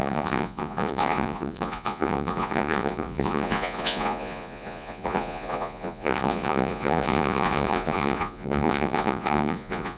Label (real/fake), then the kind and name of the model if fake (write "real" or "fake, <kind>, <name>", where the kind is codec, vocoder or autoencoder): fake, vocoder, Vocos